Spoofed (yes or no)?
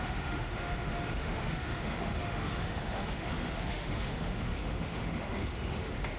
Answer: yes